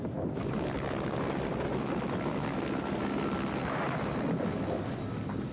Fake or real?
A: real